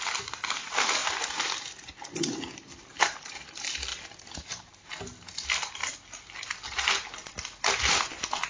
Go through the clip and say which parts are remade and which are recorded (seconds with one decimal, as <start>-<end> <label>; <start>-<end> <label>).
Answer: 0.0-1.0 recorded; 1.0-3.5 remade; 3.5-3.9 recorded; 3.9-4.5 remade; 4.5-8.5 recorded